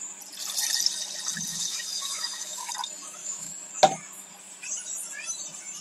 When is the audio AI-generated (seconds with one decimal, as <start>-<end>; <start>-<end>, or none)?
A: 1.5-2.7; 3.2-3.7